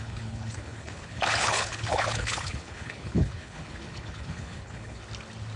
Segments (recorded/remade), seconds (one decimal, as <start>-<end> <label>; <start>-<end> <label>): 0.0-5.0 remade; 5.0-5.6 recorded